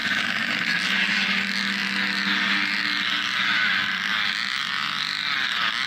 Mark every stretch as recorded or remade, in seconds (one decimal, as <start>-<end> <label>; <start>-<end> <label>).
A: 0.0-1.0 remade; 1.0-5.9 recorded